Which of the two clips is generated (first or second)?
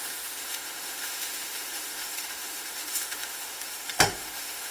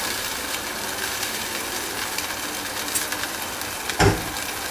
first